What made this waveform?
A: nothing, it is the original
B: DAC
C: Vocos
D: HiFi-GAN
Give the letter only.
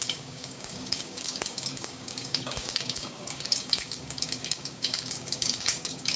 B